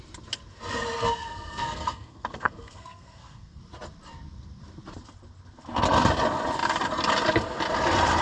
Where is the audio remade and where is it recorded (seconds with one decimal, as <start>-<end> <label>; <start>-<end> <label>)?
0.0-1.0 recorded; 1.0-3.6 remade; 3.6-8.2 recorded